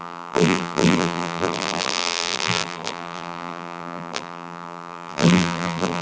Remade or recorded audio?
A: remade